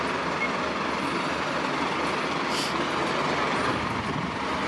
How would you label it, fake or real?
real